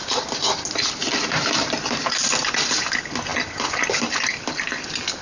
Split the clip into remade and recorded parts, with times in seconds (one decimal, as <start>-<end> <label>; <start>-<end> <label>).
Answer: 0.0-5.2 recorded